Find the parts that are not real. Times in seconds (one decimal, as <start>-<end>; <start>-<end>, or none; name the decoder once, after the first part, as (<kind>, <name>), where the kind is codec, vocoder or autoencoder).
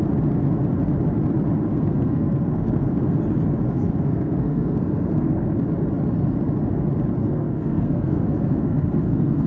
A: 1.7-3.2 (codec, SNAC); 3.7-5.6; 7.2-9.5